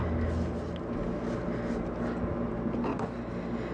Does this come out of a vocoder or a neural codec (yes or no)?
no